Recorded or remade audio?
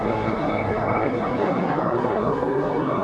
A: remade